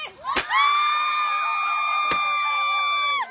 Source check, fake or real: real